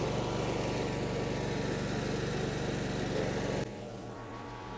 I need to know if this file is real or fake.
real